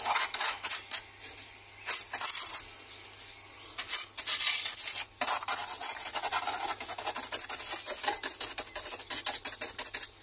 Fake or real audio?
real